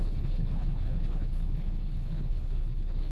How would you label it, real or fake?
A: fake